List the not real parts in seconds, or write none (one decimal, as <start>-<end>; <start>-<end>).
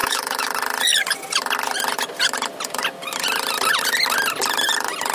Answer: 0.0-0.5